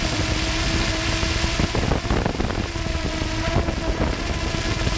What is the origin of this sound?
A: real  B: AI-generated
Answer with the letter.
A